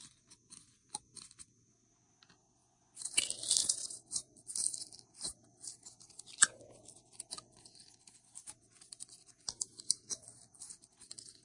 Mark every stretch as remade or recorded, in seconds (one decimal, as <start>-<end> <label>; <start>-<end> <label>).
0.0-2.6 recorded; 2.6-3.2 remade; 3.2-3.6 recorded; 3.6-4.3 remade; 4.3-11.4 recorded